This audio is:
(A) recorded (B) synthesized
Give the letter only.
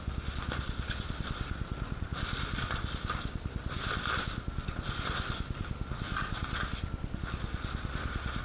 A